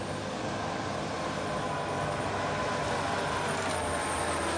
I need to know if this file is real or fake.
real